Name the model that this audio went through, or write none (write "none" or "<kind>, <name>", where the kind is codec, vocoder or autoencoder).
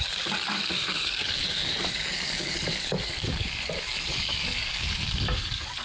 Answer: codec, DAC